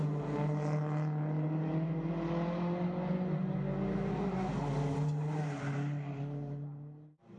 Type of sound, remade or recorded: recorded